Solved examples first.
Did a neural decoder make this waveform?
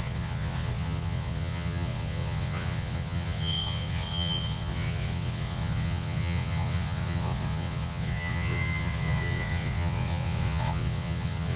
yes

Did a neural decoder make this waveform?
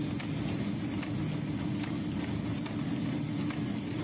no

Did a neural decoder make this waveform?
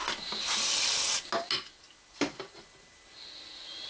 no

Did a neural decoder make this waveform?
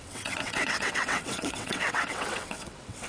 yes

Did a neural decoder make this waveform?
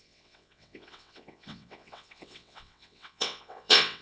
yes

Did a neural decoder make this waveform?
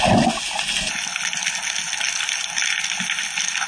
no